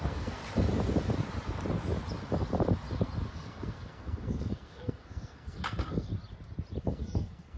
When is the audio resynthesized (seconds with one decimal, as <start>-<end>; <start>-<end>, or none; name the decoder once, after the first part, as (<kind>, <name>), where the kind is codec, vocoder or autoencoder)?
0.0-0.4 (codec, SNAC); 3.3-6.1; 6.8-7.6